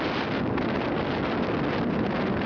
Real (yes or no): yes